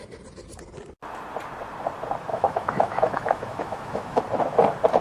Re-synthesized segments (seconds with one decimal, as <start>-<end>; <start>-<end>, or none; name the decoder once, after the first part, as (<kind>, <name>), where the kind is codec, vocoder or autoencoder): 2.3-4.2 (autoencoder, DAC-VAE)